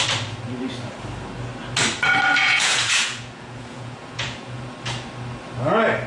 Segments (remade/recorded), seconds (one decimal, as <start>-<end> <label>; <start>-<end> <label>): 0.0-2.4 recorded; 2.4-4.7 remade; 4.7-6.1 recorded